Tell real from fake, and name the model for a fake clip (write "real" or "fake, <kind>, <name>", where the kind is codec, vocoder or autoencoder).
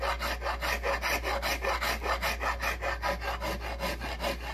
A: real